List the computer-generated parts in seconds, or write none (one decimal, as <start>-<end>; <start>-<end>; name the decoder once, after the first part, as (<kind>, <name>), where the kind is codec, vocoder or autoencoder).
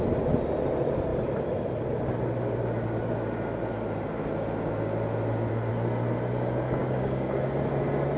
6.8-7.4 (codec, DAC)